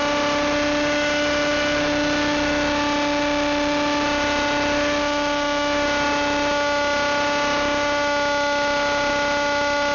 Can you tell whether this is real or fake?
real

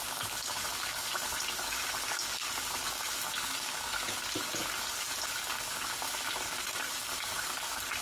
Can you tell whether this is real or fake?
fake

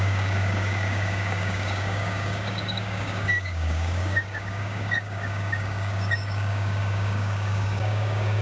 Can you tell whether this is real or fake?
fake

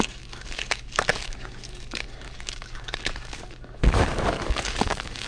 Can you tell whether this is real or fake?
fake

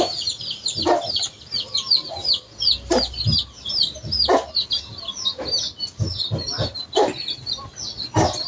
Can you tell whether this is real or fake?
real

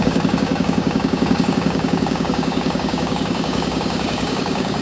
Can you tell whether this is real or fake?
fake